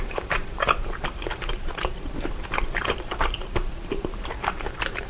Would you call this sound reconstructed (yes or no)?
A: yes